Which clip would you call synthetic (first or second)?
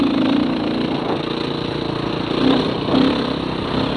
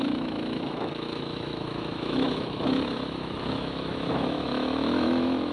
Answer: second